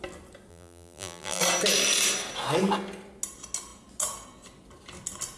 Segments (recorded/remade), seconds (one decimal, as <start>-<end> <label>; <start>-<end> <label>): 0.0-0.5 recorded; 0.5-1.4 remade; 1.4-5.4 recorded